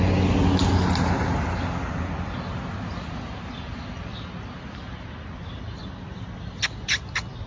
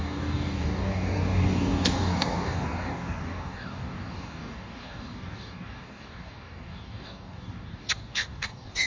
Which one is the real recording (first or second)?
first